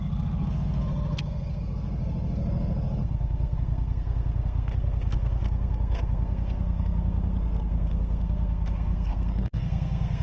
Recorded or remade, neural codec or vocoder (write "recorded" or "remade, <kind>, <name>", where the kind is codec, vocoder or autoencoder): remade, codec, SNAC